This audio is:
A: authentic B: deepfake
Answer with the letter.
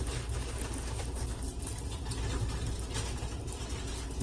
A